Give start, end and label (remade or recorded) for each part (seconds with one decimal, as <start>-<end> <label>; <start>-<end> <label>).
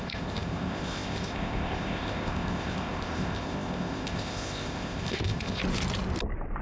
0.0-5.6 remade; 5.6-6.6 recorded